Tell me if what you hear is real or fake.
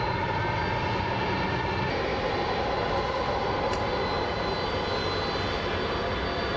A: real